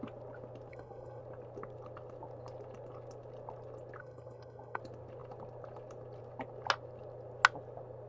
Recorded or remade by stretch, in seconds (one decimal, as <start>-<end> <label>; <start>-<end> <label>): 0.0-0.7 recorded; 0.7-1.2 remade; 1.2-4.0 recorded; 4.0-4.8 remade; 4.8-8.1 recorded